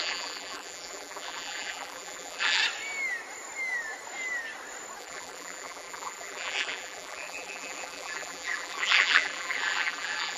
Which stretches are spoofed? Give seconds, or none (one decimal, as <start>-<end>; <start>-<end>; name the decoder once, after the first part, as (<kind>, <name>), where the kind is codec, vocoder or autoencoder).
0.0-2.6 (vocoder, BigVGAN v2); 5.0-10.4